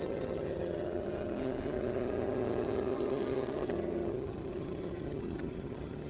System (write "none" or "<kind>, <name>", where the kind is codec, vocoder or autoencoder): vocoder, HiFi-GAN